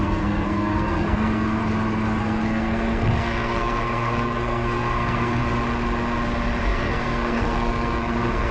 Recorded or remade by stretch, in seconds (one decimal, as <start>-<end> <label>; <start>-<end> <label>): 0.0-1.6 remade; 1.6-2.2 recorded; 2.2-5.4 remade; 5.4-6.6 recorded; 6.6-8.5 remade